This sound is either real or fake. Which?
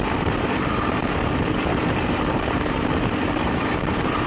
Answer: fake